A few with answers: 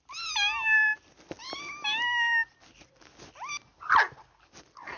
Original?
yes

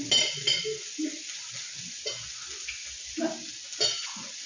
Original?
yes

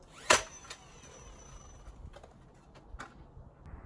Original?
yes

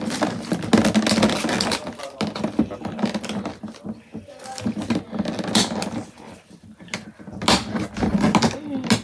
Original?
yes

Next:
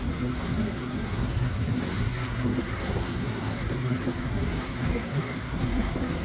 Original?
no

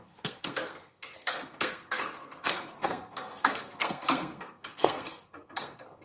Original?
no